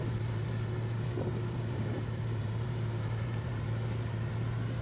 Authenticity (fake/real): fake